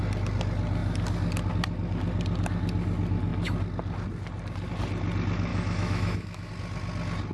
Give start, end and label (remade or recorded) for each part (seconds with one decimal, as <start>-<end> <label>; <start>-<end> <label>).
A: 0.0-5.5 recorded; 5.5-6.5 remade; 6.5-7.3 recorded